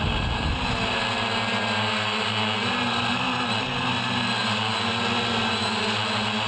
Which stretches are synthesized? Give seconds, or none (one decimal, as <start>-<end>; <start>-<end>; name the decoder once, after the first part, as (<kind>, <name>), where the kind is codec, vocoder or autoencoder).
none